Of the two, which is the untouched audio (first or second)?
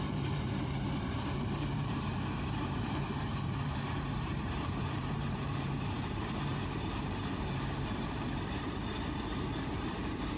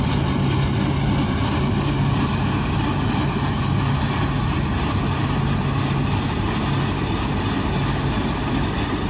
second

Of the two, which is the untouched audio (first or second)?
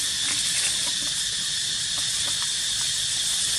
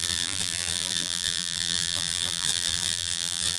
first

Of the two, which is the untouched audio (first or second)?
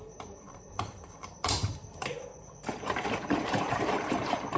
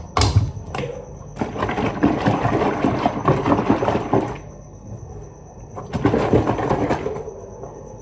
second